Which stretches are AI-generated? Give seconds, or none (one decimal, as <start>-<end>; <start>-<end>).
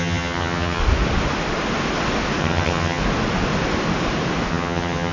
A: 0.0-0.8; 2.4-3.0; 4.5-5.1